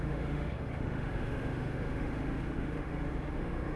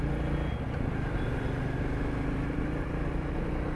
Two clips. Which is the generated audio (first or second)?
first